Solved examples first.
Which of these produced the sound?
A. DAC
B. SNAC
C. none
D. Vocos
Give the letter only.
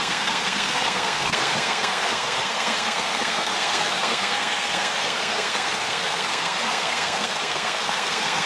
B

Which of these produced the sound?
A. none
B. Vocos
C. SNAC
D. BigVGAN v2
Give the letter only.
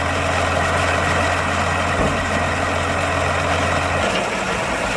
A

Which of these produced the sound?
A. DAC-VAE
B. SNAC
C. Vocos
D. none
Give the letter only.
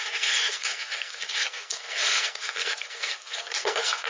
B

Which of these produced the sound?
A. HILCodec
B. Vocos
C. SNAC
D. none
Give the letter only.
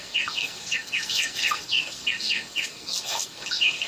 C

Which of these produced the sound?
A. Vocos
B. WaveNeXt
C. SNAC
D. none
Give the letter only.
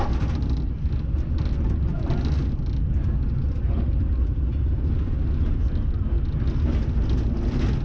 D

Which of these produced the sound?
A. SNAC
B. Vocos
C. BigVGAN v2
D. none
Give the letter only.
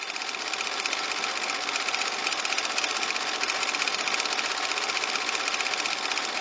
D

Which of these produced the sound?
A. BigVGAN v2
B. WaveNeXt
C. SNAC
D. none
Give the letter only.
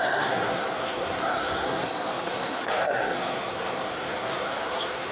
C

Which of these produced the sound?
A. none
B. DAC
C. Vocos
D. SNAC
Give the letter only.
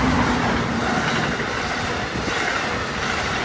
A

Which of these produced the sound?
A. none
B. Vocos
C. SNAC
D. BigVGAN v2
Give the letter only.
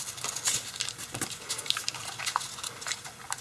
A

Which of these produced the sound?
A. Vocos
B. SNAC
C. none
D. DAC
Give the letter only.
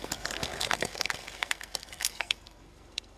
B